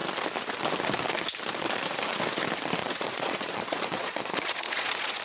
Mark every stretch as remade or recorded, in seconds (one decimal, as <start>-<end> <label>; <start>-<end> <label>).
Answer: 0.0-2.8 recorded; 2.8-5.2 remade